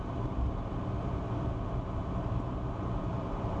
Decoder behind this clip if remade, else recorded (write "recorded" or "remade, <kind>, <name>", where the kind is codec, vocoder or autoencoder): remade, vocoder, BigVGAN v2